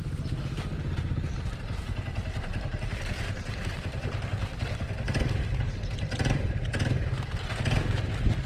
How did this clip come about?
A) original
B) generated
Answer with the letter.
B